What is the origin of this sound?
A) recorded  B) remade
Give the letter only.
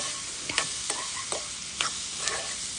A